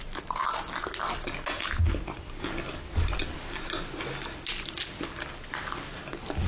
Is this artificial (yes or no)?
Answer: no